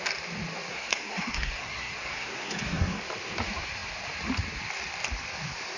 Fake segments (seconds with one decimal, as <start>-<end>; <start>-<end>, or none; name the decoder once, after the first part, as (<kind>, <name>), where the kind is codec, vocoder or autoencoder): 0.7-3.0 (codec, SNAC)